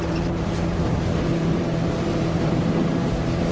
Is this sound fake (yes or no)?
yes